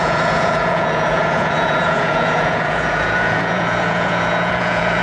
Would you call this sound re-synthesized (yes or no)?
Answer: yes